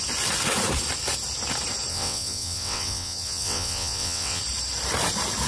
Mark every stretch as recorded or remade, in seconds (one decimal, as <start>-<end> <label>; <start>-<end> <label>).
0.0-1.9 recorded; 1.9-4.4 remade; 4.4-5.5 recorded